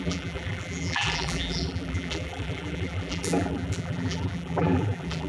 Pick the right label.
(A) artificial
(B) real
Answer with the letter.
A